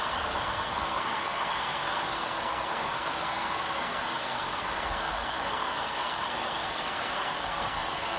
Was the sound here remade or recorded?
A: remade